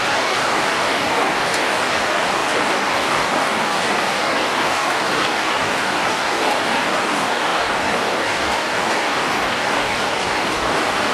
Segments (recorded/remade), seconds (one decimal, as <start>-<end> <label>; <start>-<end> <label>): 0.0-11.1 remade